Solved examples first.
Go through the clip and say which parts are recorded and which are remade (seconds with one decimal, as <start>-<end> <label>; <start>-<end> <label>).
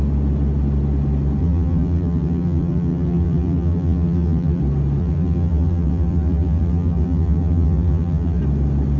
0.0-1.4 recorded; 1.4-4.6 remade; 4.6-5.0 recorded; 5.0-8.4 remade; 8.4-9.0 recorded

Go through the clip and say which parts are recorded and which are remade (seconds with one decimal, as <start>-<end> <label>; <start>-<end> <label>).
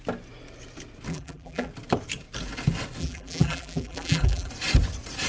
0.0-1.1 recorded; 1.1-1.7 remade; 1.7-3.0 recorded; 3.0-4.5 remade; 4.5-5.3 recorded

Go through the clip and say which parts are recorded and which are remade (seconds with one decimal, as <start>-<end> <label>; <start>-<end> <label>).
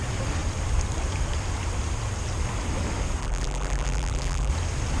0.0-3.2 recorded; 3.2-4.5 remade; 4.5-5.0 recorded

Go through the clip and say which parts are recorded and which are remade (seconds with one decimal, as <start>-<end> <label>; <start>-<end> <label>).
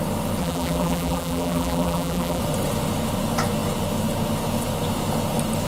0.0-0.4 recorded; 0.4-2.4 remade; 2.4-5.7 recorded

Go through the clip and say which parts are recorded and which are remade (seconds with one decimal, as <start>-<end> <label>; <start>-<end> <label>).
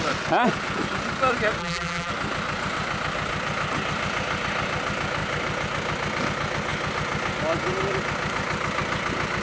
0.0-1.6 recorded; 1.6-2.1 remade; 2.1-9.4 recorded